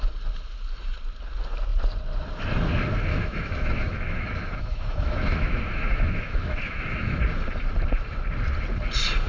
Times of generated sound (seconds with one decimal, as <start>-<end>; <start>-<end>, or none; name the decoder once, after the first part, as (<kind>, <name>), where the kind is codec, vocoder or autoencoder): 3.1-7.2 (autoencoder, DAC-VAE)